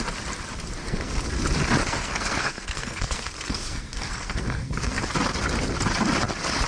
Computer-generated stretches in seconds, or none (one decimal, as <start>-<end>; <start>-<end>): 0.8-1.3; 1.8-5.0